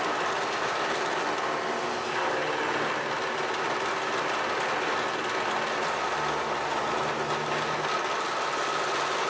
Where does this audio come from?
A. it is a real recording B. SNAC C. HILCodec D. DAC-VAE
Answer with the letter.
A